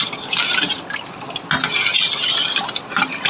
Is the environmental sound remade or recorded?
recorded